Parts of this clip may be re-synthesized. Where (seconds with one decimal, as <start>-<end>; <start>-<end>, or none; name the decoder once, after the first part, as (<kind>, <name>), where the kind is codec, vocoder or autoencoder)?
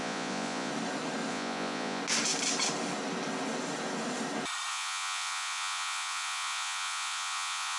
0.0-0.7 (vocoder, Vocos); 1.3-2.0; 4.7-7.8